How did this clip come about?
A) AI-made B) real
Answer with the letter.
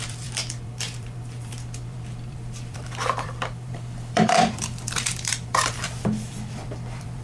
A